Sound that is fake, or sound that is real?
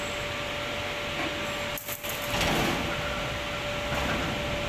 real